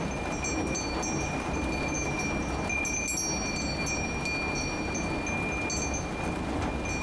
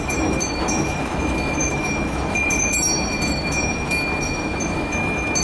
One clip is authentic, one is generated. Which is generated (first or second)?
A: second